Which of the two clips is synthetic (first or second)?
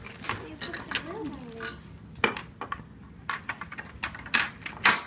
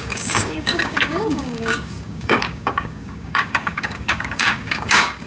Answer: second